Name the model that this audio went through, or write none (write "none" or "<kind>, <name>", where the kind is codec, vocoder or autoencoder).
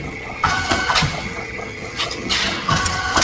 vocoder, HiFi-GAN